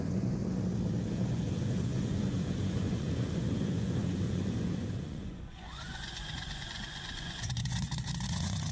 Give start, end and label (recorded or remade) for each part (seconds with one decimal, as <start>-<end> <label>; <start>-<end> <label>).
0.0-0.4 remade; 0.4-1.1 recorded; 1.1-8.7 remade